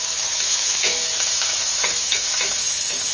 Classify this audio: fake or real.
fake